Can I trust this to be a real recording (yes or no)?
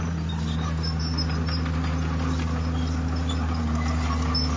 yes